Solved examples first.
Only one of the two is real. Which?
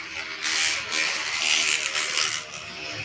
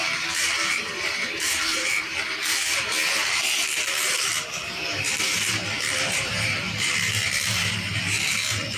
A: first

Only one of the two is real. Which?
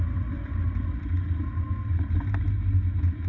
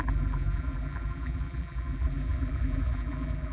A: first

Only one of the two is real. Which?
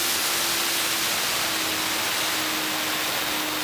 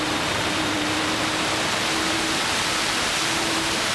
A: first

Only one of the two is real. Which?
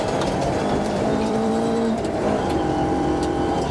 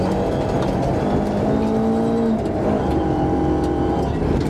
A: second